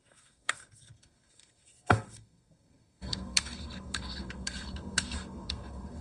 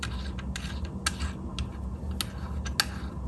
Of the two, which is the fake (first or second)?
first